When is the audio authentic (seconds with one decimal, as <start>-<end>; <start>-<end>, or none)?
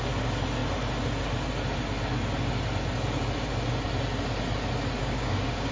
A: 0.0-5.0